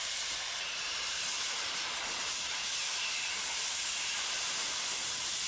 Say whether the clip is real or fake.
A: fake